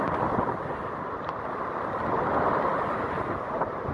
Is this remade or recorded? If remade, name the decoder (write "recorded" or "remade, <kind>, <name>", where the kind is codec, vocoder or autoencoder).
recorded